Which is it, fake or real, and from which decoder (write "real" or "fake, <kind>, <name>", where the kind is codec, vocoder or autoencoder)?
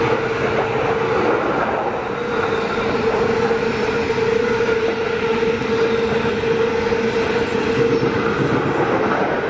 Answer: real